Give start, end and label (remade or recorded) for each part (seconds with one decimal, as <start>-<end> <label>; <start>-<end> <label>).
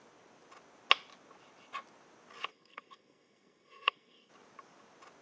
0.0-2.5 recorded; 2.5-4.3 remade; 4.3-5.2 recorded